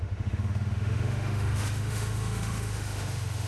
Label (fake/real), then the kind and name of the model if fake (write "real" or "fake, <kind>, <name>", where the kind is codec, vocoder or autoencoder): fake, autoencoder, DAC-VAE